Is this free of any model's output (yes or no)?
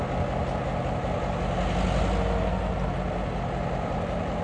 yes